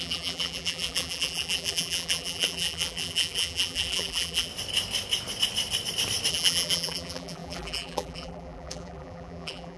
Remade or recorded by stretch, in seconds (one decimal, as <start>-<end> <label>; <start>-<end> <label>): 0.0-4.5 remade; 4.5-6.3 recorded; 6.3-9.8 remade